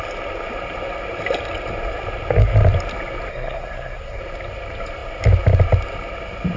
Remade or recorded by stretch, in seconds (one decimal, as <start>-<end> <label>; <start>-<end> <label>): 0.0-3.3 recorded; 3.3-4.2 remade; 4.2-6.6 recorded